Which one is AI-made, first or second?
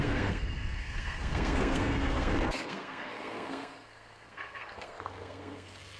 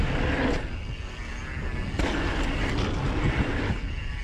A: first